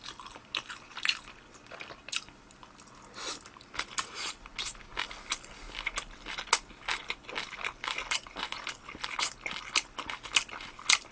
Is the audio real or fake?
real